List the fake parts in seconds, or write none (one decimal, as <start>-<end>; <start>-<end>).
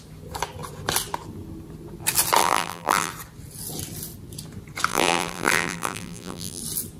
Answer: 2.4-3.1; 4.9-6.6